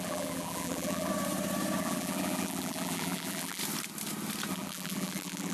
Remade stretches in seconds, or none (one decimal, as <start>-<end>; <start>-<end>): 0.0-1.1; 1.8-3.6; 4.5-5.5